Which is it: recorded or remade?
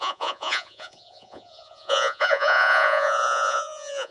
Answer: remade